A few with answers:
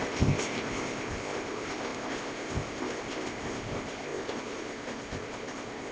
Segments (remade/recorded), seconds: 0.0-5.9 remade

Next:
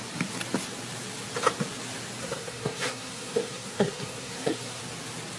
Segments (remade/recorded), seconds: 0.0-2.2 recorded; 2.2-4.8 remade; 4.8-5.4 recorded

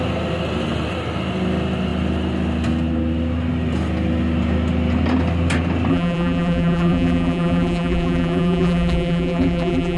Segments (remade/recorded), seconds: 0.0-5.9 recorded; 5.9-10.0 remade

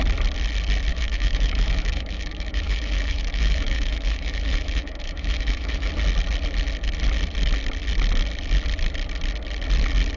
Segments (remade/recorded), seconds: 0.0-0.9 recorded; 0.9-5.9 remade; 5.9-10.2 recorded

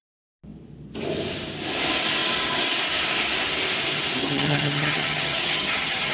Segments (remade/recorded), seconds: 0.0-4.2 recorded; 4.2-6.1 remade

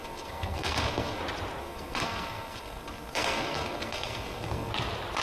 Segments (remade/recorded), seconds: 0.0-1.2 remade; 1.2-1.6 recorded; 1.6-4.7 remade; 4.7-5.2 recorded

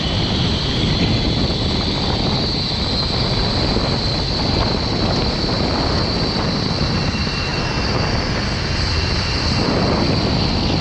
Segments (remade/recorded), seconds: 0.0-10.8 recorded

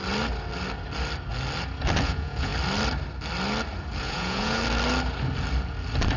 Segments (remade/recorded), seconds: 0.0-2.0 recorded; 2.0-2.5 remade; 2.5-4.0 recorded; 4.0-4.6 remade; 4.6-6.2 recorded